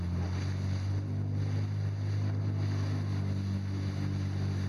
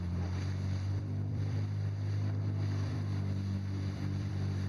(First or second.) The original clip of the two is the first